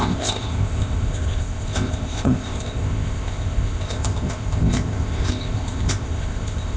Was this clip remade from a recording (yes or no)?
yes